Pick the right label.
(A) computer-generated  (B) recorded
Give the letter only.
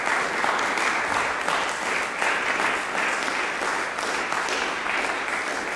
B